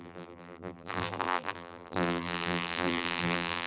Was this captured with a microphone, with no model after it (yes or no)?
no